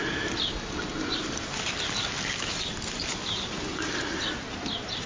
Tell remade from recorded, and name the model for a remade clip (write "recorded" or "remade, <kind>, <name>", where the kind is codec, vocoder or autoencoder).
recorded